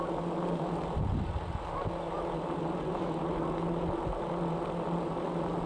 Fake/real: real